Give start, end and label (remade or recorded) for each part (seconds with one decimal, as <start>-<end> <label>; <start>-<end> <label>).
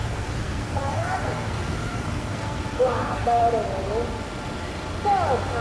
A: 0.0-3.4 remade; 3.4-5.6 recorded